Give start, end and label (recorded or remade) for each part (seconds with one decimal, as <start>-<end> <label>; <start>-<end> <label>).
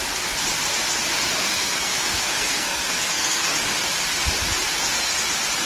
0.0-1.4 recorded; 1.4-3.5 remade; 3.5-5.7 recorded